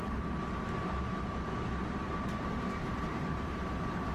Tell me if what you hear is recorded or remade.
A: remade